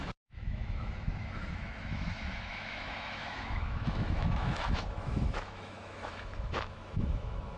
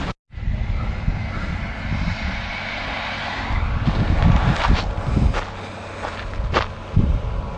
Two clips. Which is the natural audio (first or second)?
second